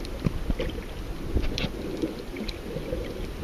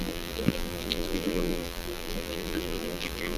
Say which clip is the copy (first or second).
second